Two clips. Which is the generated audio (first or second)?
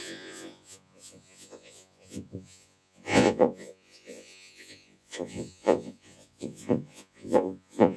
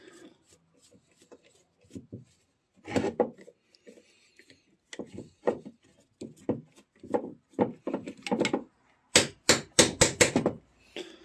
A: first